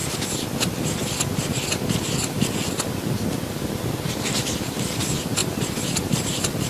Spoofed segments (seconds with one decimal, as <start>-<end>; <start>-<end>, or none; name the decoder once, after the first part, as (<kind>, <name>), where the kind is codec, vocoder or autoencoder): none